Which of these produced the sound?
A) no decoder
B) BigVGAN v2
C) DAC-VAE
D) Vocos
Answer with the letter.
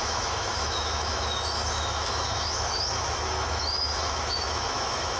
C